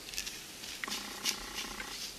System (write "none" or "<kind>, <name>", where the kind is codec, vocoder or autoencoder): none